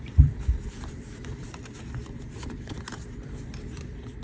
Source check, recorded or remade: remade